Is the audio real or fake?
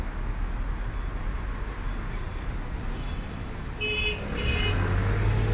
real